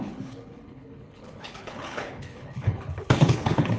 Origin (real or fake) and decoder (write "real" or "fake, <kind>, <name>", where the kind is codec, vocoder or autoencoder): fake, codec, HILCodec